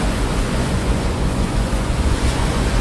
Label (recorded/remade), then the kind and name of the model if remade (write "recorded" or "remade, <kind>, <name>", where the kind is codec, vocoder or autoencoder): remade, vocoder, Vocos